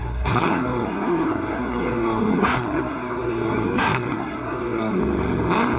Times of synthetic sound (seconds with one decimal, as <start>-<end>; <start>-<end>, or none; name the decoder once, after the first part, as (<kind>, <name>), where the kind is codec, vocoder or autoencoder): 0.0-5.0 (codec, SNAC)